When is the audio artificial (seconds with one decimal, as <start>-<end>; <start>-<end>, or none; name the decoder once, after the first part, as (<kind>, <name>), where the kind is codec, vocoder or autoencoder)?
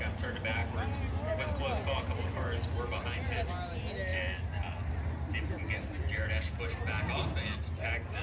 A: none